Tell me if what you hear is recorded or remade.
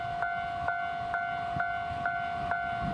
recorded